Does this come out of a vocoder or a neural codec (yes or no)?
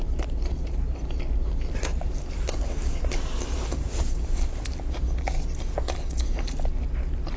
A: no